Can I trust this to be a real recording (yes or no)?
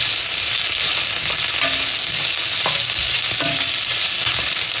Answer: yes